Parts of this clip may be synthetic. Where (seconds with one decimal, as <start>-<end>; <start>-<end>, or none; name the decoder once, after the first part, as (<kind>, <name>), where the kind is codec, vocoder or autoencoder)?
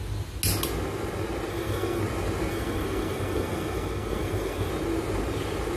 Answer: 1.5-2.0 (codec, SNAC); 2.5-4.7